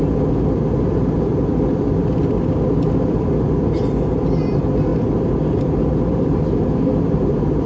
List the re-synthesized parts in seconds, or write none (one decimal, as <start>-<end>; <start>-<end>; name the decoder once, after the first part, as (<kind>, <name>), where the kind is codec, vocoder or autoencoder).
none